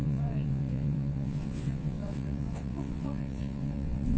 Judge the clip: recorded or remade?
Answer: remade